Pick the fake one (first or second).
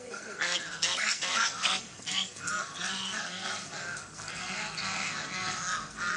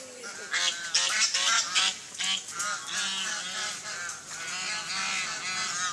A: first